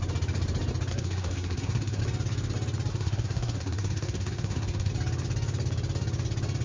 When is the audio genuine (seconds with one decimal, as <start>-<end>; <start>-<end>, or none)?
0.0-0.9; 2.0-2.9; 4.9-6.6